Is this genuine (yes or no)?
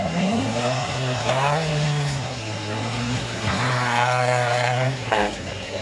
no